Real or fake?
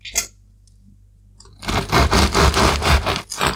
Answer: real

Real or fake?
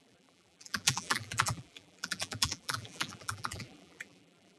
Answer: fake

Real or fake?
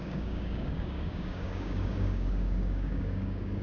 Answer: fake